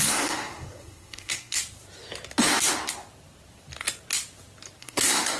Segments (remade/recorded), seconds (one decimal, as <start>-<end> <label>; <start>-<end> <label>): 0.0-1.6 remade; 1.6-4.8 recorded; 4.8-5.4 remade